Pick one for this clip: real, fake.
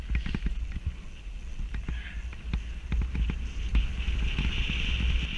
real